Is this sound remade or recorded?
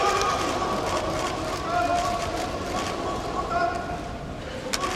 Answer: recorded